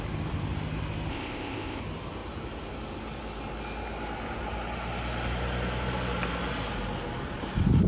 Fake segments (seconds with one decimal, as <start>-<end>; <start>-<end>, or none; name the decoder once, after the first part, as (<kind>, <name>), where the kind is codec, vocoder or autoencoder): 1.1-1.8 (codec, ZipCodec)